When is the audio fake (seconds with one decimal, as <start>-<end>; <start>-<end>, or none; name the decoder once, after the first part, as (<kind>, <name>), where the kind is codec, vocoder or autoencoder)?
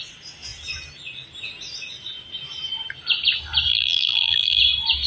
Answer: 3.7-4.6 (vocoder, BigVGAN v2)